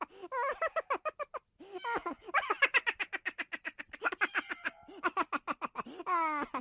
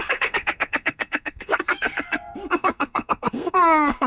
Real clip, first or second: first